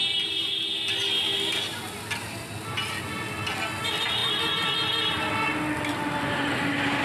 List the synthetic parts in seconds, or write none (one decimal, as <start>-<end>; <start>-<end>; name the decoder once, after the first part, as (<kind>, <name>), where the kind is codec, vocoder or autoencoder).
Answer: 0.0-0.5 (vocoder, BigVGAN v2)